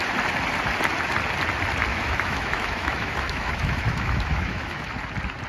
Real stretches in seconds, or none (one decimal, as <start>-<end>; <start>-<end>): 0.0-1.9; 4.9-5.5